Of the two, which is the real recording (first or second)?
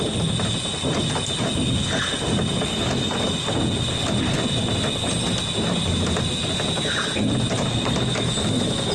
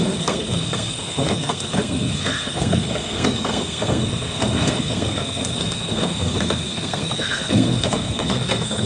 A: first